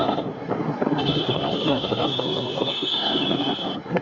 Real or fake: fake